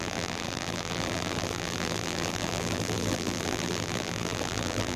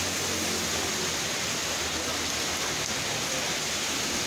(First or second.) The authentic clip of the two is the second